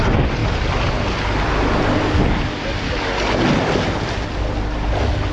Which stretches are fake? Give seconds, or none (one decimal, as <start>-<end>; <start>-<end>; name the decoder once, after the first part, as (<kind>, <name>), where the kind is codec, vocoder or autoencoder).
none